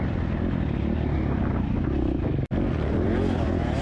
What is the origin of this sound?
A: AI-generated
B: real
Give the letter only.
B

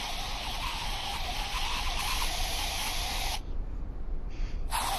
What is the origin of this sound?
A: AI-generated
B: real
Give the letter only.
B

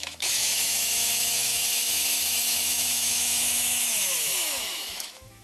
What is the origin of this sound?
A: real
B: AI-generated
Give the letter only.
B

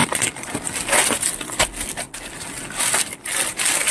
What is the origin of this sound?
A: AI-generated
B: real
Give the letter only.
B